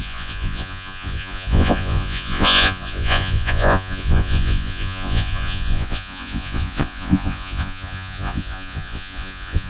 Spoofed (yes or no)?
yes